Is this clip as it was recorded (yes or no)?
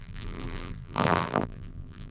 no